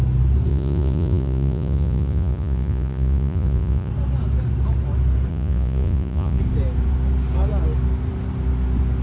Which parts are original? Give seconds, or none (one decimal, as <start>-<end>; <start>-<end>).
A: 0.0-0.5; 3.9-5.3; 6.4-9.0